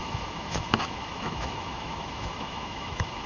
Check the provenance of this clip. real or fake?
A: fake